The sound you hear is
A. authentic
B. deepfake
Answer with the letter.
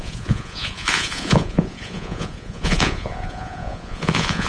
B